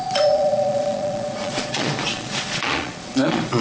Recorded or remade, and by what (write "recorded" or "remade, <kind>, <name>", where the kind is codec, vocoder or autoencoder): remade, vocoder, Vocos